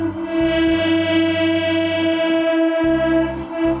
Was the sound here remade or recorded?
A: recorded